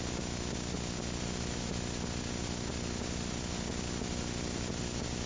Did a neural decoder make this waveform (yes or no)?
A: no